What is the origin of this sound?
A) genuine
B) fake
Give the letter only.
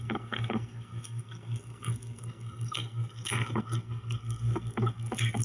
B